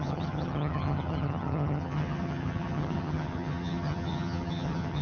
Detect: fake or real fake